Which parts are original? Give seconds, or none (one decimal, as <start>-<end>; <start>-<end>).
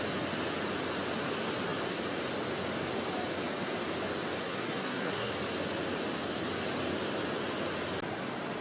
0.0-4.4; 5.3-8.6